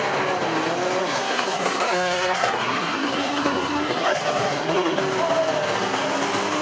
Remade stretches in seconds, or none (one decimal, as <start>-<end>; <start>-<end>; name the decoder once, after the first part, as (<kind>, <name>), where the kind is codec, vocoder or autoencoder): 1.0-5.0 (codec, SNAC)